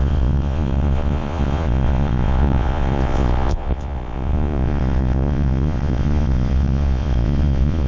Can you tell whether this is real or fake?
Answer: fake